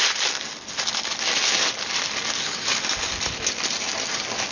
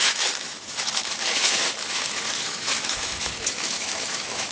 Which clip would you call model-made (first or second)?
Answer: second